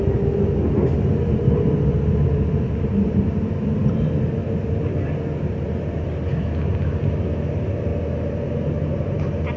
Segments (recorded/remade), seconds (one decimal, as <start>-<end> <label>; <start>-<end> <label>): 0.0-9.6 recorded